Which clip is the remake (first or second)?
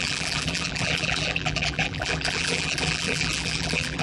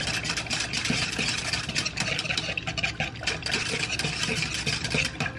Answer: first